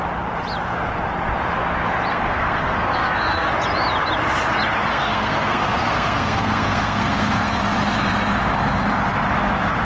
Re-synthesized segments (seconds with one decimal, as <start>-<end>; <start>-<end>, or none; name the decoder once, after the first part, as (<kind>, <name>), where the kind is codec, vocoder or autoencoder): 2.1-3.5 (codec, SNAC); 4.9-7.6